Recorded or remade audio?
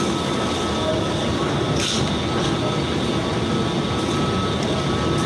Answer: recorded